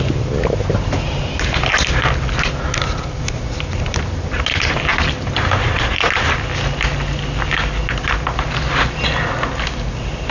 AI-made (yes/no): no